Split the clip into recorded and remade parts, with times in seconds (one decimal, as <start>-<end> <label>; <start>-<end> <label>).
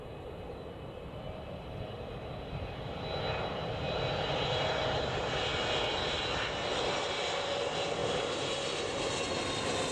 0.0-8.0 remade; 8.0-9.5 recorded; 9.5-9.9 remade